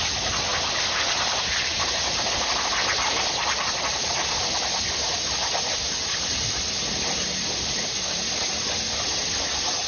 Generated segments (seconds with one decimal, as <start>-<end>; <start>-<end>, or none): 0.0-9.9